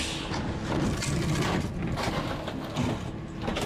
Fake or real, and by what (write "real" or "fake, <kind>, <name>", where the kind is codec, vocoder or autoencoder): real